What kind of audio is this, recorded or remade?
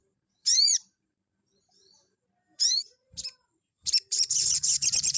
remade